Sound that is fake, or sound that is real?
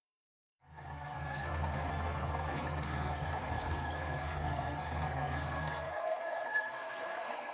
fake